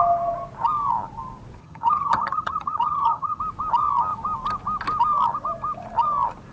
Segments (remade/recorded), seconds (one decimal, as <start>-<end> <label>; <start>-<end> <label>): 0.0-1.6 recorded; 1.6-3.4 remade; 3.4-6.5 recorded